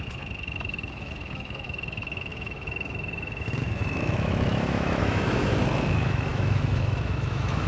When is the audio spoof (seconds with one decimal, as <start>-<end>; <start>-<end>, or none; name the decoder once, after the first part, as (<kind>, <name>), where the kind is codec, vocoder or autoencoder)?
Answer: 0.0-7.7 (autoencoder, DAC-VAE)